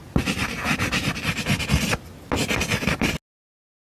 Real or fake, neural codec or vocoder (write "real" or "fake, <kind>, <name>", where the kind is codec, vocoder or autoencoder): real